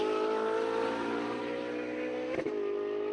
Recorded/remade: recorded